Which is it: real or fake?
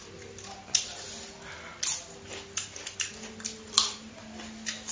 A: real